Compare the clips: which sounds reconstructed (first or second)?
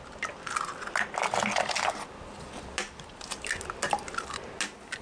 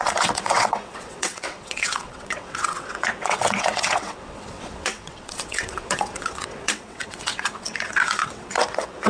second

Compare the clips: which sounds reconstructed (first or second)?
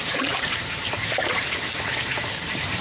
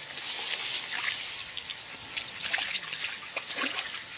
first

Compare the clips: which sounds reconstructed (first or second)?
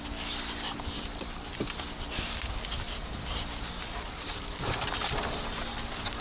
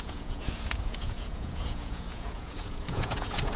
second